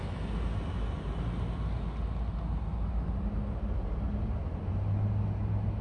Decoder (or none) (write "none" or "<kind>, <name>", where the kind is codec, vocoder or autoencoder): none